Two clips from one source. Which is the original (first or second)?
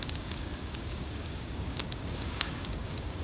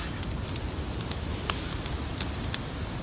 second